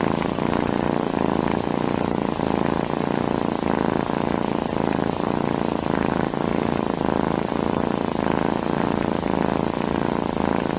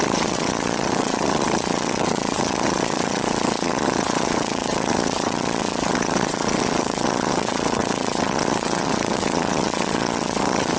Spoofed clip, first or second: second